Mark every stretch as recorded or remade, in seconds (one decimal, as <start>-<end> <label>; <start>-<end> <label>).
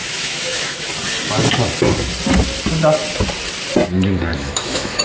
0.0-0.9 remade; 0.9-4.3 recorded; 4.3-5.0 remade